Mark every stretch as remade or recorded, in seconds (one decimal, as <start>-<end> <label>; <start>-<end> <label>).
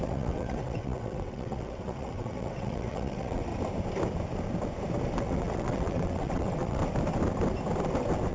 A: 0.0-3.5 remade; 3.5-5.2 recorded; 5.2-6.8 remade; 6.8-8.3 recorded